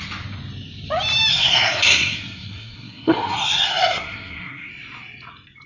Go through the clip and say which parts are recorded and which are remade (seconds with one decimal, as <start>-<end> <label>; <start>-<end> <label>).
0.0-1.3 recorded; 1.3-4.7 remade; 4.7-5.7 recorded